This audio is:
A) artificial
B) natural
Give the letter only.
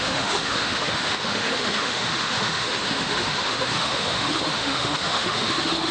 A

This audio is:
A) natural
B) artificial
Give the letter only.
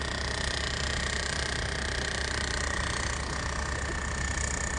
A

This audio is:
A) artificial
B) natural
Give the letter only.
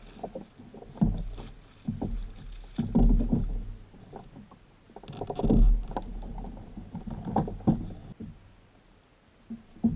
B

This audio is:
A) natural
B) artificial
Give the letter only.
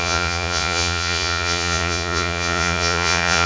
B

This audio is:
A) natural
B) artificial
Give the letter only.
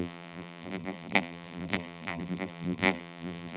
B